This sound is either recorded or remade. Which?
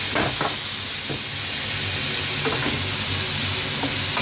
recorded